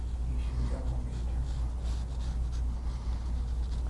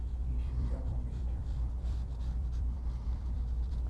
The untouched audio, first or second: first